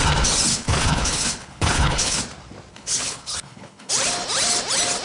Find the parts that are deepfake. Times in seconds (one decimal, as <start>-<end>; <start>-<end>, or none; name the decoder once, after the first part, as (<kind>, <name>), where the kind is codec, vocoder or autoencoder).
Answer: 0.5-2.2 (codec, HILCodec); 2.7-3.9